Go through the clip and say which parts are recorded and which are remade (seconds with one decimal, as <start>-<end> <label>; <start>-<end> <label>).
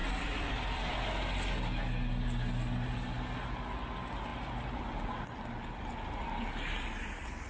0.0-0.8 remade; 0.8-7.5 recorded